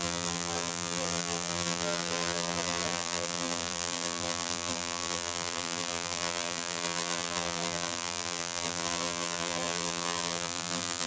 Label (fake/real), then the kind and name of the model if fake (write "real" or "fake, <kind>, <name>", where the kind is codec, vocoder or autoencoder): fake, vocoder, BigVGAN v2